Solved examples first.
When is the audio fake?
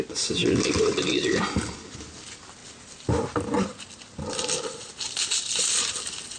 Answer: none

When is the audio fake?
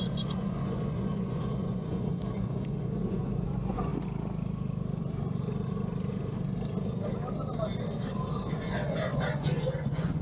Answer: 0.0-3.9 (vocoder, Vocos); 8.5-10.2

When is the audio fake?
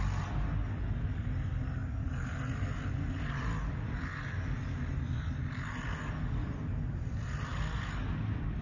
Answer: none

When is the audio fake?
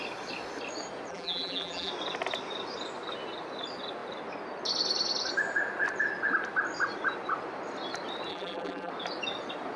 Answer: 1.1-1.9 (vocoder, BigVGAN v2); 8.3-8.9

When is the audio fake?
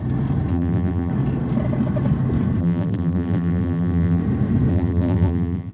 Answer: 0.5-1.1 (vocoder, BigVGAN v2); 2.6-4.2; 4.7-5.7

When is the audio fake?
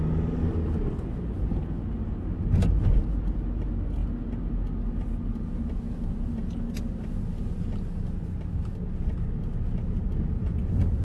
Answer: none